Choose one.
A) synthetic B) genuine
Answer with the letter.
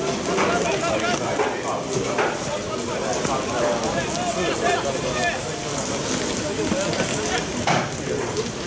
B